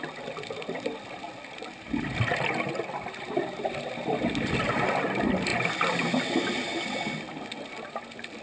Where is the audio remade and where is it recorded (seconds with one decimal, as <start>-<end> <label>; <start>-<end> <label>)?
0.0-8.4 recorded